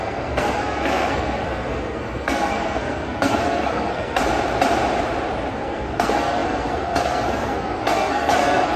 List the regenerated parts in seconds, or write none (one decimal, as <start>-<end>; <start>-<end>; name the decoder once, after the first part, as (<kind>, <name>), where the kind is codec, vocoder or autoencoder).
0.0-4.2 (codec, SNAC); 5.5-8.8